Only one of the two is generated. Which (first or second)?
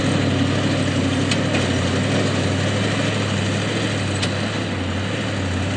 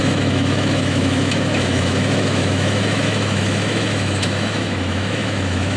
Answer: second